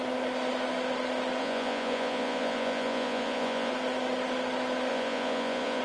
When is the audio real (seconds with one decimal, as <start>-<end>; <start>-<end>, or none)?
0.0-1.4; 3.7-4.9

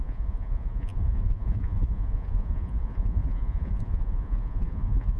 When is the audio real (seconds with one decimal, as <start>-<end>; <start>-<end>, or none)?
none

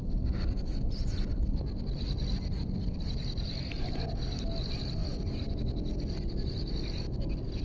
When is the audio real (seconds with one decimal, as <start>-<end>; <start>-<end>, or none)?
0.0-7.6

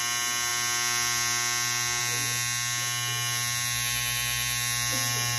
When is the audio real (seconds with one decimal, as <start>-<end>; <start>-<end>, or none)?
0.0-5.4

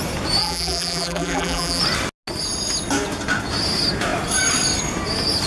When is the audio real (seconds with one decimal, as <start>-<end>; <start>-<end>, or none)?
0.0-0.4; 1.8-5.5

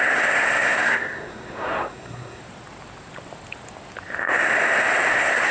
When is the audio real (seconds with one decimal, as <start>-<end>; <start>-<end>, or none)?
2.4-5.1

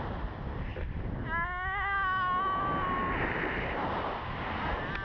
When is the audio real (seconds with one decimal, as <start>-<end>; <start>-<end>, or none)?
0.0-5.0